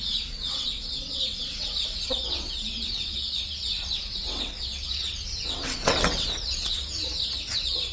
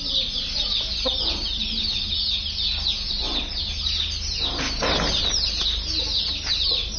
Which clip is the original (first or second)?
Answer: second